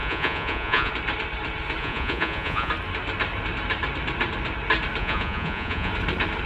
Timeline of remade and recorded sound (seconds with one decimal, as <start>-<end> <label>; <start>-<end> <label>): 0.0-0.9 remade; 0.9-1.8 recorded; 1.8-2.7 remade; 2.7-5.0 recorded; 5.0-5.9 remade; 5.9-6.5 recorded

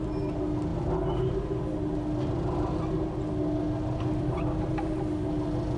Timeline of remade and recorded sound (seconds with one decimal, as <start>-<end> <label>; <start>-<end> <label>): 0.0-5.8 recorded

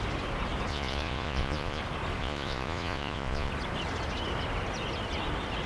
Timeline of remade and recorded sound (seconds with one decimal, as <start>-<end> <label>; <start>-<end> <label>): 0.0-0.7 recorded; 0.7-1.8 remade; 1.8-2.2 recorded; 2.2-3.5 remade; 3.5-5.7 recorded

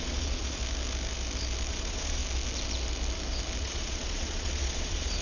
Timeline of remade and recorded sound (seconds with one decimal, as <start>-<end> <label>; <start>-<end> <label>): 0.0-0.6 remade; 0.6-1.7 recorded; 1.7-2.2 remade; 2.2-3.6 recorded; 3.6-5.2 remade